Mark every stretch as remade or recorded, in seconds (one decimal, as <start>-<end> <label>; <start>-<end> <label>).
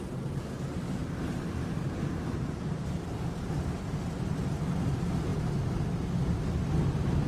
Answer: 0.0-1.0 recorded; 1.0-3.6 remade; 3.6-7.3 recorded